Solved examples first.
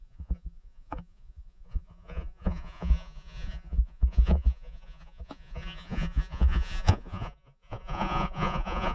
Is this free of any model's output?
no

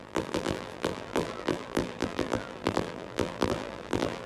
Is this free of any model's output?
no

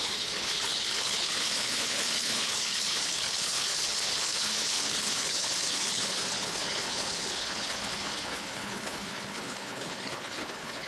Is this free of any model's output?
no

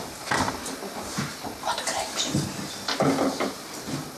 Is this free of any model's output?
yes